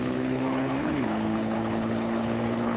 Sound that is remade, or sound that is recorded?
remade